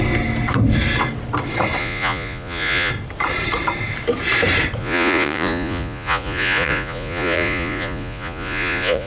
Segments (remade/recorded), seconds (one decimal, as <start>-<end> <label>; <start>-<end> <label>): 0.0-1.8 recorded; 1.8-2.9 remade; 2.9-4.8 recorded; 4.8-9.1 remade